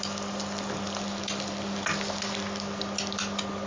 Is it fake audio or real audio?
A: real